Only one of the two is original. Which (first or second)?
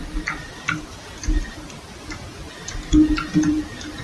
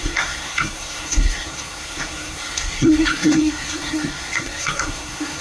first